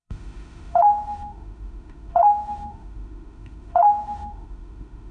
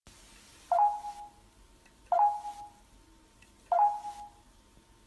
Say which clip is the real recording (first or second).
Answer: second